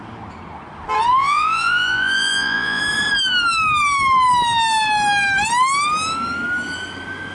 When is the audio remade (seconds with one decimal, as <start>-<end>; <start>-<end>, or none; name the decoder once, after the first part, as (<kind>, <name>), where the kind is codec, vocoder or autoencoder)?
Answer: 1.2-2.8 (vocoder, Vocos)